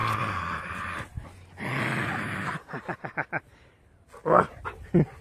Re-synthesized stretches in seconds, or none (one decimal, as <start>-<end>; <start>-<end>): none